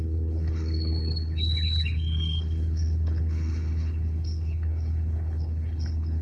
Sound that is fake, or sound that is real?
fake